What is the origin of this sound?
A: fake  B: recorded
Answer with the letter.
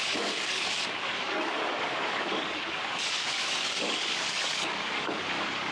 A